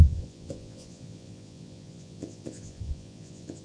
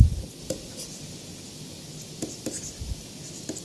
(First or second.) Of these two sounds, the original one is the second